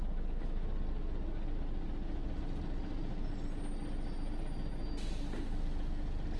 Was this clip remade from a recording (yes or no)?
no